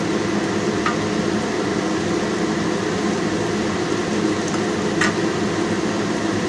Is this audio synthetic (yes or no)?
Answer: no